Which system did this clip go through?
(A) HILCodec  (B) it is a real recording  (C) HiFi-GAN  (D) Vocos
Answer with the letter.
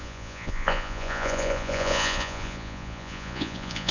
D